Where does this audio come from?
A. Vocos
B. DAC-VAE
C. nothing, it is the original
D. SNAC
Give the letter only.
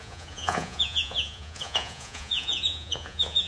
A